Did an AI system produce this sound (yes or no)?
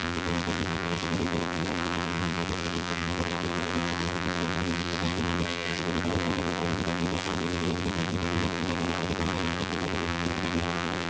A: yes